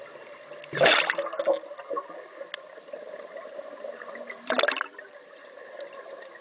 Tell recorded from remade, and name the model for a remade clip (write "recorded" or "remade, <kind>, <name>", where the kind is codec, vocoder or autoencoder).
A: recorded